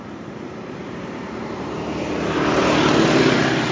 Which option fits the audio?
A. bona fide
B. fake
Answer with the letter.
B